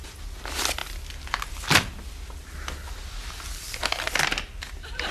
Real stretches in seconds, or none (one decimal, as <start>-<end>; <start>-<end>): 0.0-5.1